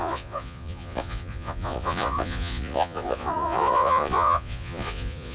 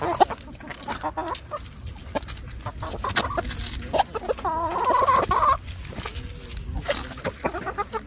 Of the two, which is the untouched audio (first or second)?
second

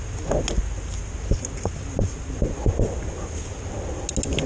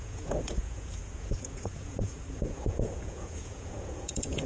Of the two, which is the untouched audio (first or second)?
first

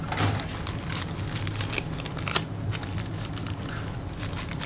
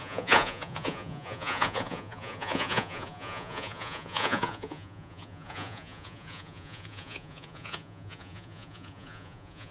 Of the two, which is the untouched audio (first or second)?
first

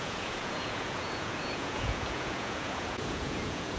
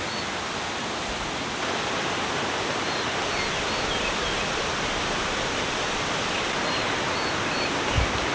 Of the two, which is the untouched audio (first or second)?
second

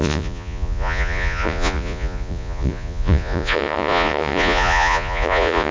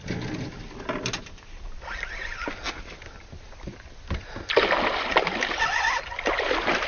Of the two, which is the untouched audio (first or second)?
second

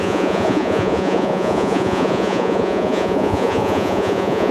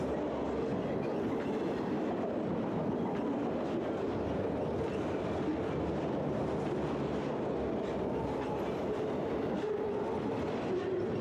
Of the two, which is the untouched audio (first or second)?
second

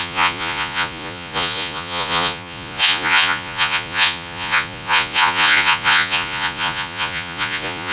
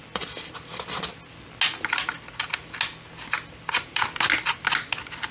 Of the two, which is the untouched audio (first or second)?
second